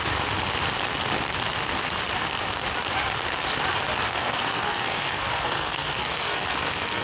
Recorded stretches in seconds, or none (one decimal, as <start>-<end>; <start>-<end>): 0.0-4.1